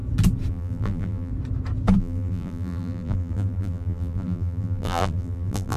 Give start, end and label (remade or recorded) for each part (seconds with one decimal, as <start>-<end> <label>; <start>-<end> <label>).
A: 0.0-0.5 recorded; 0.5-1.3 remade; 1.3-2.0 recorded; 2.0-5.8 remade